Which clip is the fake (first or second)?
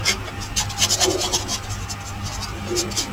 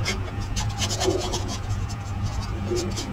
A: second